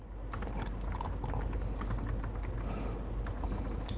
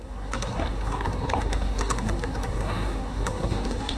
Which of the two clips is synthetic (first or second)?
second